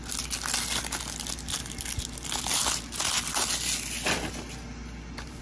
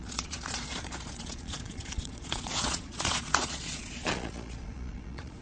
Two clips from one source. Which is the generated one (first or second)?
second